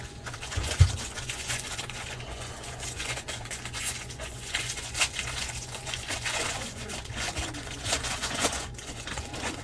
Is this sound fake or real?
fake